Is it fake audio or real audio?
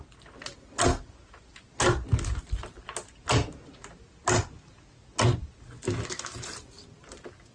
real